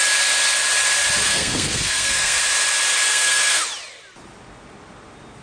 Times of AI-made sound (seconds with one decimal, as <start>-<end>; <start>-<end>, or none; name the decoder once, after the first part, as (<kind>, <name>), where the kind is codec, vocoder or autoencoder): 1.2-2.4 (codec, SNAC); 3.1-3.6